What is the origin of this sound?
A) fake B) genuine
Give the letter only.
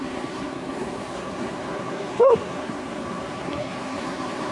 A